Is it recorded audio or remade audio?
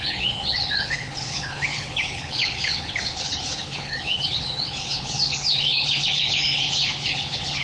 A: remade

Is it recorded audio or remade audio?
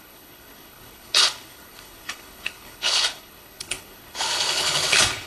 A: remade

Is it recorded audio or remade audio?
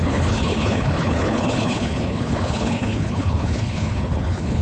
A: remade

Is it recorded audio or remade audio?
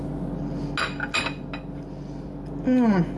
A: recorded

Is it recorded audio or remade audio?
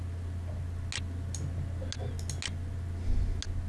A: recorded